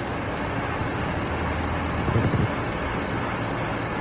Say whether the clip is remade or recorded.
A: recorded